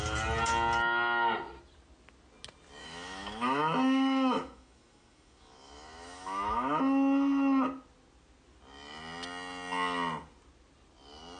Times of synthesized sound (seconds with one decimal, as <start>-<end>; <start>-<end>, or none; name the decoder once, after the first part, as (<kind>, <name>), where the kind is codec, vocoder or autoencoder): 2.8-6.8 (autoencoder, DAC-VAE)